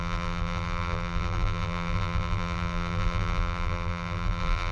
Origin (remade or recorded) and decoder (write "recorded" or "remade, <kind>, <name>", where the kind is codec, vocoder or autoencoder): remade, vocoder, BigVGAN v2